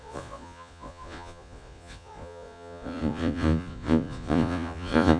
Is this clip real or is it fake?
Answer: fake